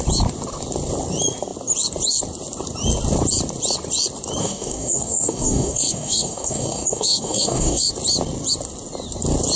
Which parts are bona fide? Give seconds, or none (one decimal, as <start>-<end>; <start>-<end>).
0.0-4.4; 7.9-9.6